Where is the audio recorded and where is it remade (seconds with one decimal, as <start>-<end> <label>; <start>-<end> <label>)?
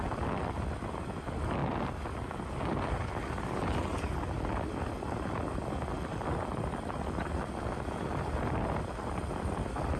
0.0-10.0 recorded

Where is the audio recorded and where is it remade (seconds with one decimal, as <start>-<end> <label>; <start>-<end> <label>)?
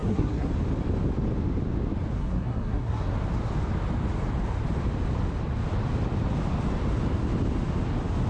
0.0-0.5 remade; 0.5-2.2 recorded; 2.2-3.1 remade; 3.1-8.3 recorded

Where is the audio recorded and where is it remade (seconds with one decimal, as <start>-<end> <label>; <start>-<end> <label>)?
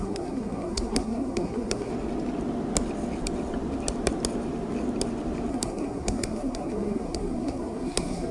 0.0-1.9 remade; 1.9-5.5 recorded; 5.5-8.3 remade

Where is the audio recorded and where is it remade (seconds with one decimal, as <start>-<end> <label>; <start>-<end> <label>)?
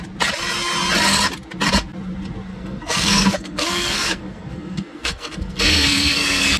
0.0-2.5 recorded; 2.5-6.6 remade